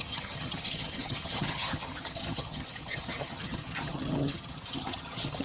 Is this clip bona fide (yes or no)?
no